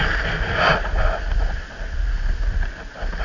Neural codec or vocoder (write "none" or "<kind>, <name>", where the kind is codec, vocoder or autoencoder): none